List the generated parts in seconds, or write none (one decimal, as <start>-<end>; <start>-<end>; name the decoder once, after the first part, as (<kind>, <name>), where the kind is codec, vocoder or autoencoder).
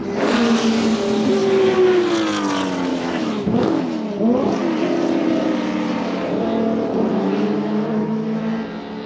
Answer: 2.9-3.8 (autoencoder, DAC-VAE); 7.1-8.4